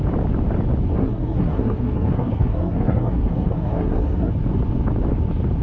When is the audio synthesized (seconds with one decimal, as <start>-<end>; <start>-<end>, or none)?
0.9-4.3